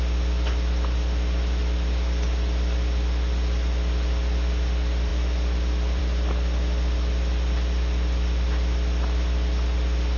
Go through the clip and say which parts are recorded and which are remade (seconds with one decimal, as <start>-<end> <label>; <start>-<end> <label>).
0.0-10.2 recorded